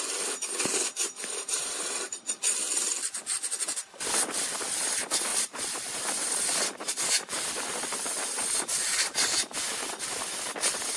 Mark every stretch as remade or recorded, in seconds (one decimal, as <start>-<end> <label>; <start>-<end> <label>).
0.0-0.7 recorded; 0.7-2.4 remade; 2.4-5.3 recorded; 5.3-9.6 remade; 9.6-11.0 recorded